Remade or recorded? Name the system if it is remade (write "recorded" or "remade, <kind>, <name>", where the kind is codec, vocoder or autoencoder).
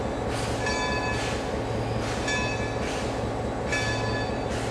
recorded